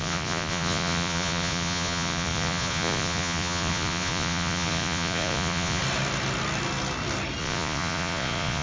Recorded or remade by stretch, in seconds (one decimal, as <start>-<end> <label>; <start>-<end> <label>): 0.0-5.8 remade; 5.8-7.4 recorded; 7.4-8.6 remade